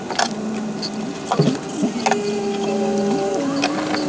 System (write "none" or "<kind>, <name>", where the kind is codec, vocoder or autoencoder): none